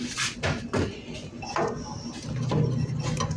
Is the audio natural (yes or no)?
yes